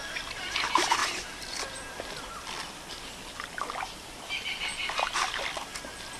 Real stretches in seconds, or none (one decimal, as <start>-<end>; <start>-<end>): 0.0-6.2